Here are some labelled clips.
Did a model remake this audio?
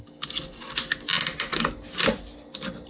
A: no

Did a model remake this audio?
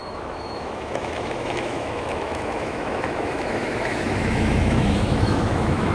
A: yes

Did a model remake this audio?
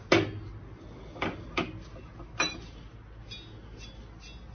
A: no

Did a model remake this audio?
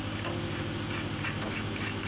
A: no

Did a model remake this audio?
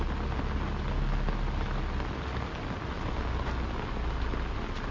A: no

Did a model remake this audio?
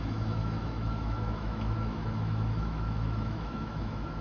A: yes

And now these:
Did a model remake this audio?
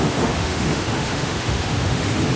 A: yes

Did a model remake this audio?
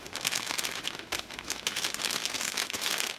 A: yes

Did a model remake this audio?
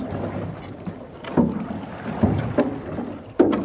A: no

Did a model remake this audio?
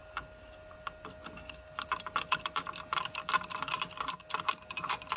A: no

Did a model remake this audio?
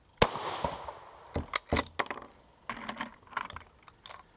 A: no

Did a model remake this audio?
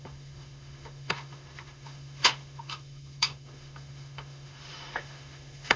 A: yes